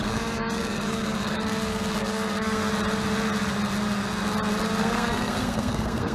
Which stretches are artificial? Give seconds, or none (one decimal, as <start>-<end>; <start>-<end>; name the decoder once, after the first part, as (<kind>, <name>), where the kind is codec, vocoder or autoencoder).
0.0-2.7 (codec, SNAC); 4.8-6.1